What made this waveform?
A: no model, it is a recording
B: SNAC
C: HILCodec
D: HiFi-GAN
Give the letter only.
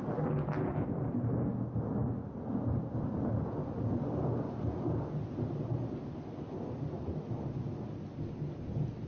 A